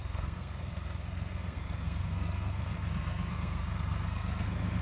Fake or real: fake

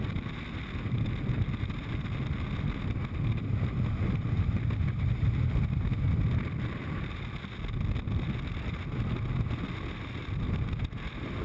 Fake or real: real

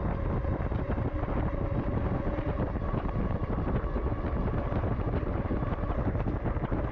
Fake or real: real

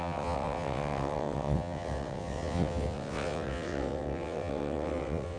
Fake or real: fake